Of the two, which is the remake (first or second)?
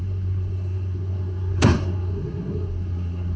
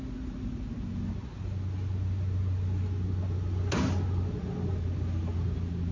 first